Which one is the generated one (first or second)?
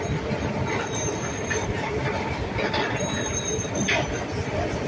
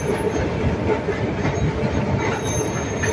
first